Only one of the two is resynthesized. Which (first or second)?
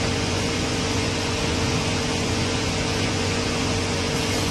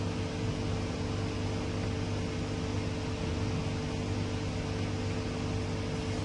first